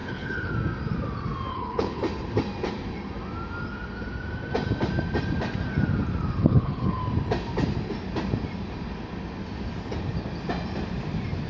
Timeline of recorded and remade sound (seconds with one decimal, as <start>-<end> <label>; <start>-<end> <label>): 0.0-0.5 remade; 0.5-1.5 recorded; 1.5-2.0 remade; 2.0-6.4 recorded; 6.4-7.0 remade; 7.0-11.5 recorded